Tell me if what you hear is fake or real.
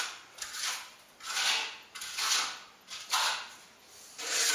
real